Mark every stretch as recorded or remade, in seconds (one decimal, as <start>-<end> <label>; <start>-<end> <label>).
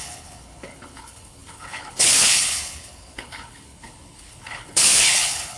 0.0-5.6 remade